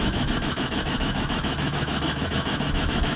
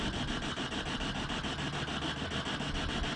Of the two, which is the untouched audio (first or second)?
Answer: second